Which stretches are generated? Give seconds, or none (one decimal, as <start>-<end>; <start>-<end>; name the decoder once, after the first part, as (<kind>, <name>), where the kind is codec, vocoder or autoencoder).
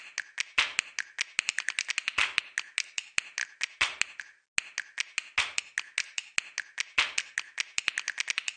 none